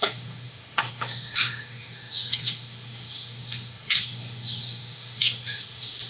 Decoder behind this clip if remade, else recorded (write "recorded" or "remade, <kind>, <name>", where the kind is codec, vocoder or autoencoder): remade, autoencoder, DAC-VAE